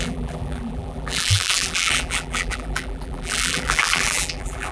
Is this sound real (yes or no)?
no